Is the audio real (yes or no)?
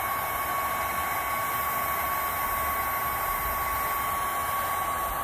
yes